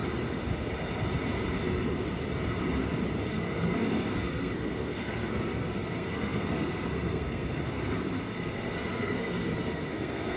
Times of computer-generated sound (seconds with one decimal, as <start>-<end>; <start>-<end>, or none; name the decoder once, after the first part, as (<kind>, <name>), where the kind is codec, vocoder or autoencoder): 3.3-10.4 (codec, SNAC)